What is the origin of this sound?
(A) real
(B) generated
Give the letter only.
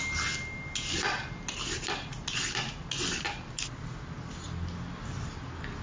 A